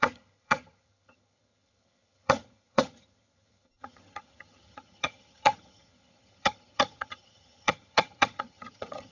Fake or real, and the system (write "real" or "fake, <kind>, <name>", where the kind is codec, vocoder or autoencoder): fake, vocoder, HiFi-GAN